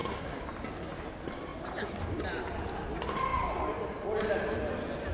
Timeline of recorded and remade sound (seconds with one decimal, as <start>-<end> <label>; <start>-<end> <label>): 0.0-1.5 recorded; 1.5-2.6 remade; 2.6-5.1 recorded